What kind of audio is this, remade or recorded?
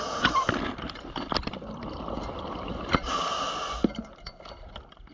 recorded